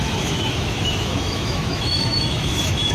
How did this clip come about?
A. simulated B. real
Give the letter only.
A